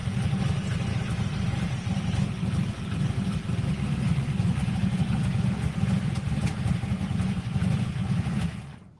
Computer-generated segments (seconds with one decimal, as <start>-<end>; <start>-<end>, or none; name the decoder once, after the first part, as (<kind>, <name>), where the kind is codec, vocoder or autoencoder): 3.7-9.0 (vocoder, Vocos)